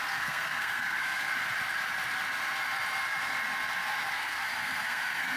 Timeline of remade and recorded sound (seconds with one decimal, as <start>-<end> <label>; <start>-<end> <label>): 0.0-1.3 remade; 1.3-4.1 recorded; 4.1-5.4 remade